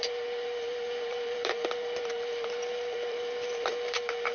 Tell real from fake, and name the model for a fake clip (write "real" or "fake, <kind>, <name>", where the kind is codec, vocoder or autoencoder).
fake, vocoder, BigVGAN v2